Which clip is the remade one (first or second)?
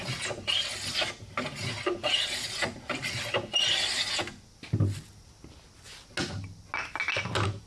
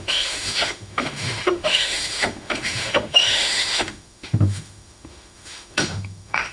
second